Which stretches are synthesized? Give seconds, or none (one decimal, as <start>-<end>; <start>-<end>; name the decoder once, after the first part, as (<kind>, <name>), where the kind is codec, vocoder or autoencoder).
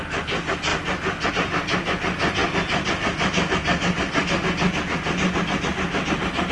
none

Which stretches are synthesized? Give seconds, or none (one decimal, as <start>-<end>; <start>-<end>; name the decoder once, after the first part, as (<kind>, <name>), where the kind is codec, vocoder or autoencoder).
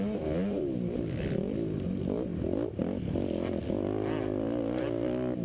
none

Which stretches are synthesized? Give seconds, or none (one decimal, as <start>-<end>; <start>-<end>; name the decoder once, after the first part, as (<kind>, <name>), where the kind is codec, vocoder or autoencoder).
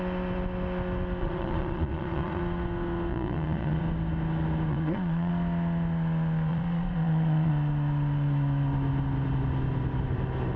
1.2-2.4 (vocoder, Vocos); 3.1-3.8; 4.7-5.3; 6.5-7.5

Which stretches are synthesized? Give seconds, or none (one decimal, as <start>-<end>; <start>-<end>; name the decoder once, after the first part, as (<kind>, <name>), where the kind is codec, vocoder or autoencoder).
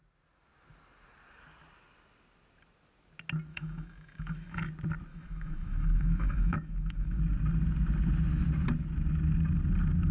3.5-4.6 (autoencoder, DAC-VAE); 5.1-7.2